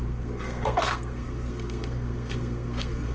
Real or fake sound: fake